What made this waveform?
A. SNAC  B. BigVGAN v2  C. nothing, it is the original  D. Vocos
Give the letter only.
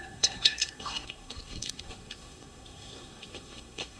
A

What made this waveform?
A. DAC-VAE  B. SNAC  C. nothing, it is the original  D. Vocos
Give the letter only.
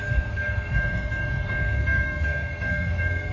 B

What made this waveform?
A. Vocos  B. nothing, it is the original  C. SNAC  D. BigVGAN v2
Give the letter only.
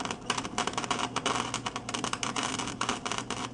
B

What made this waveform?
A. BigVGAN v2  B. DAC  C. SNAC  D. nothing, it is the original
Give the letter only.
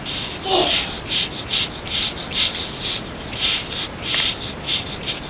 D